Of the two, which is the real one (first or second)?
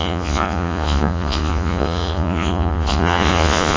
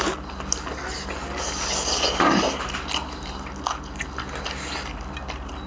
second